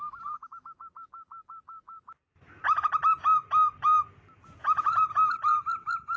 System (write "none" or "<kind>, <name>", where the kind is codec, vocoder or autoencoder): none